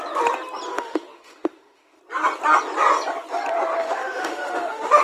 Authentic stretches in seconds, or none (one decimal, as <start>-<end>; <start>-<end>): 0.0-0.7; 2.0-3.8